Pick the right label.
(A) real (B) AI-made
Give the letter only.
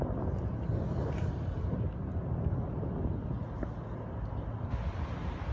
A